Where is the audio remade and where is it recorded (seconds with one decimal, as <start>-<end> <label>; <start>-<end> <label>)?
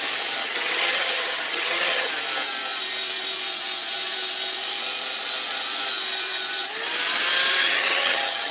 0.0-0.4 recorded; 0.4-2.1 remade; 2.1-7.6 recorded; 7.6-8.5 remade